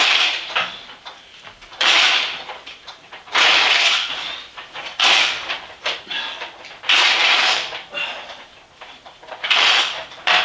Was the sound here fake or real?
fake